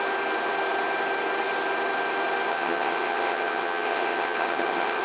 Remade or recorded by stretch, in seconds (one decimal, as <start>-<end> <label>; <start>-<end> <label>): 0.0-2.5 recorded; 2.5-5.0 remade